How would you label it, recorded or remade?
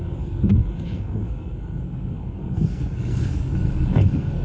remade